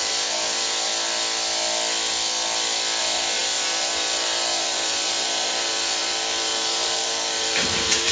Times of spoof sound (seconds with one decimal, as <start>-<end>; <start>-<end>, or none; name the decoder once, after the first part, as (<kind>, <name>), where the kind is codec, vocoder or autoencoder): 0.0-0.9 (vocoder, BigVGAN v2); 3.0-8.1